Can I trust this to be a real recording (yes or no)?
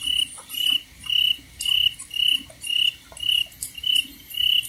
no